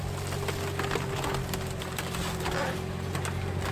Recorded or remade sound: recorded